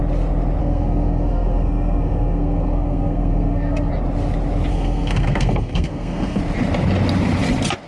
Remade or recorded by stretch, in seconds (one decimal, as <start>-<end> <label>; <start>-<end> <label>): 0.0-0.6 recorded; 0.6-3.9 remade; 3.9-4.7 recorded; 4.7-6.4 remade; 6.4-7.9 recorded